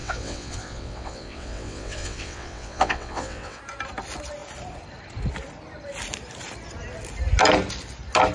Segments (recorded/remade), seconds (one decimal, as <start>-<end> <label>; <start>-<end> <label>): 0.0-3.6 remade; 3.6-8.3 recorded